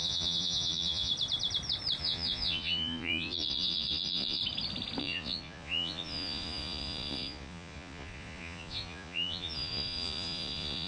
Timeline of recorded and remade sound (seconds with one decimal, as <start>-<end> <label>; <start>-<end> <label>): 0.0-1.1 remade; 1.1-2.0 recorded; 2.0-4.4 remade; 4.4-5.0 recorded; 5.0-10.9 remade